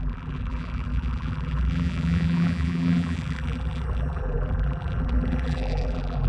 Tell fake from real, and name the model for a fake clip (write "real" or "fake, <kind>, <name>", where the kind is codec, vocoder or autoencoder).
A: fake, vocoder, BigVGAN v2